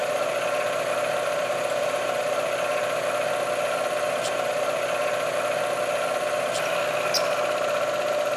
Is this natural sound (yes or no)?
yes